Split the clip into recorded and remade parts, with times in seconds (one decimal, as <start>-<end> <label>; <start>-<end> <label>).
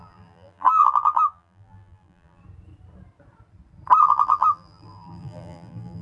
0.0-2.4 remade; 2.4-4.0 recorded; 4.0-6.0 remade